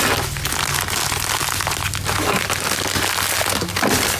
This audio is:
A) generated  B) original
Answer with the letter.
B